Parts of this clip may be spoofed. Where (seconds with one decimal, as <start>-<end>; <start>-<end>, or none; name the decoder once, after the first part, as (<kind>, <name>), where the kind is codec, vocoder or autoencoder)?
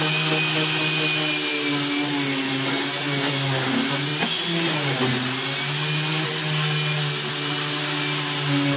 none